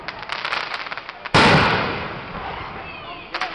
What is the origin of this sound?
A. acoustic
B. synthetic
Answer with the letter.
A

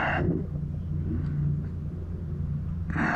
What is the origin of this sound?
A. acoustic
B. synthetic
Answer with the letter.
A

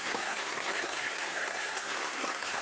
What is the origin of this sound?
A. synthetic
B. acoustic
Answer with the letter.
A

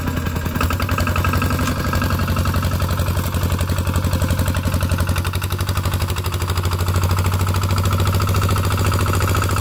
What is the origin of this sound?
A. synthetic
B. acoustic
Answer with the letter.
B